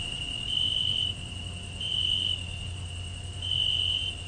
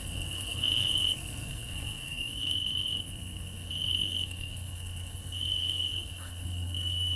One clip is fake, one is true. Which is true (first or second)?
first